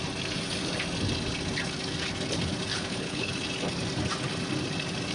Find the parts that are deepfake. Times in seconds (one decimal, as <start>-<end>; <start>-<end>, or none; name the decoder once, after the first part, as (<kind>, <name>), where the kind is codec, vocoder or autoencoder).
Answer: 2.7-3.3 (codec, HILCodec)

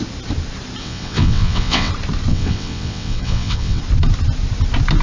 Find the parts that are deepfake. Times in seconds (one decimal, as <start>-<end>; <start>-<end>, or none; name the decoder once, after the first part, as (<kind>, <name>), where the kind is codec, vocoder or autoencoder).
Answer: 0.8-1.9 (vocoder, WaveNeXt); 2.3-3.8

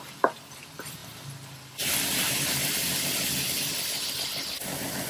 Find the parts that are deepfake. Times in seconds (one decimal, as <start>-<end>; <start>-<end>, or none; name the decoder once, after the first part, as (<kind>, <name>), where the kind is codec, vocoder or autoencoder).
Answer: none

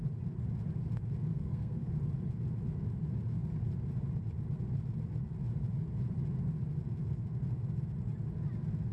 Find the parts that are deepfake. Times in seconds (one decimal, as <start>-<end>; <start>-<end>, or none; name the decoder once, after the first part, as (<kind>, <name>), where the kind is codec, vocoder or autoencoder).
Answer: 1.3-1.9 (codec, SNAC)

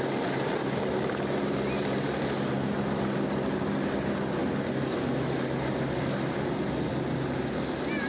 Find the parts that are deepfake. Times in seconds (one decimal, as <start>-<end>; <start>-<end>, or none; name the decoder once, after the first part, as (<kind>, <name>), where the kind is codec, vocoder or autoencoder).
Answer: none

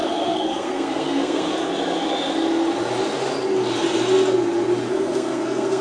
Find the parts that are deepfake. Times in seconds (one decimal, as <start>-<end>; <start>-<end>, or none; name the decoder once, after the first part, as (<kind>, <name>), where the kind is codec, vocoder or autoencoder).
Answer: 0.0-1.5 (codec, SNAC); 4.9-5.8